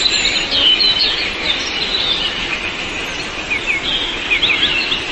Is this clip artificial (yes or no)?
no